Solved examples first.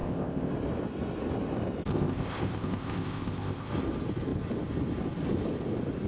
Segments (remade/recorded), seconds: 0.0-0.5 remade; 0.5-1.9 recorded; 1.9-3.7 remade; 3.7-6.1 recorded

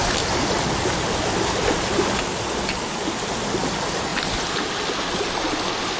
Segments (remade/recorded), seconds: 0.0-6.0 recorded

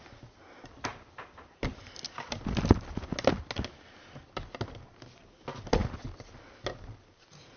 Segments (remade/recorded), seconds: 0.0-7.6 recorded

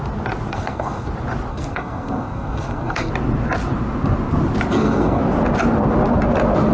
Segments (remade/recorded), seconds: 0.0-0.5 recorded; 0.5-1.1 remade; 1.1-1.5 recorded; 1.5-3.1 remade; 3.1-4.7 recorded; 4.7-5.2 remade; 5.2-6.7 recorded

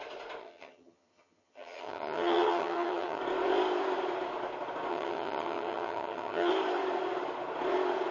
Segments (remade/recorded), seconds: 0.0-0.4 recorded; 0.4-3.2 remade; 3.2-4.9 recorded; 4.9-6.5 remade; 6.5-8.1 recorded

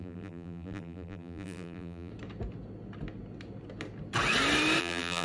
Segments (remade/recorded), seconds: 0.0-2.1 remade; 2.1-4.8 recorded; 4.8-5.2 remade

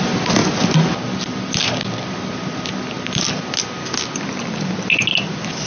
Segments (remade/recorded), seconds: 0.0-5.7 recorded